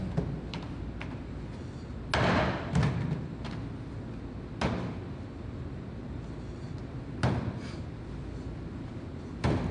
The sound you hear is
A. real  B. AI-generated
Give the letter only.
A